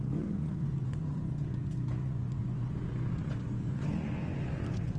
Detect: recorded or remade remade